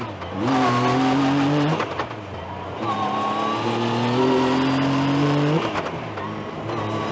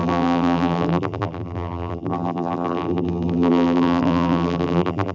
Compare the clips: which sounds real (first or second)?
first